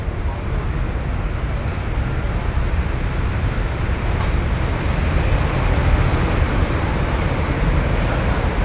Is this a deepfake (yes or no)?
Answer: no